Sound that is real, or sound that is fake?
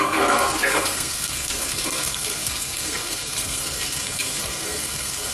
fake